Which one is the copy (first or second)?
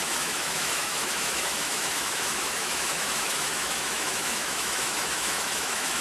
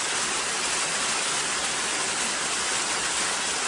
first